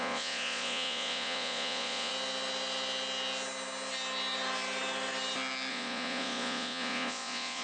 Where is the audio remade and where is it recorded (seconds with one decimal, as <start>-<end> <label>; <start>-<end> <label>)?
0.0-2.1 remade; 2.1-5.7 recorded; 5.7-7.6 remade